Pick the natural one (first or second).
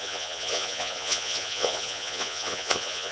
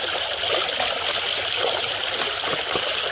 second